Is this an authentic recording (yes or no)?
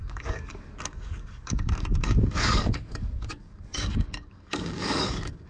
no